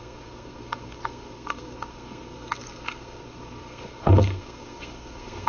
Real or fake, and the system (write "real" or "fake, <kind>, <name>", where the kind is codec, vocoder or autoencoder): fake, codec, SNAC